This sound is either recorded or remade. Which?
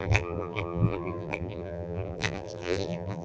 remade